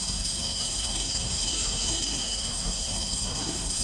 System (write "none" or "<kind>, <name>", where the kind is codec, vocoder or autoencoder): codec, SNAC